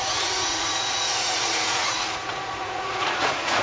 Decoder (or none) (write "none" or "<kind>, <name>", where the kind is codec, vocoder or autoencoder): vocoder, Vocos